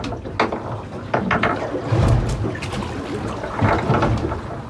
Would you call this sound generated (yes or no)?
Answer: no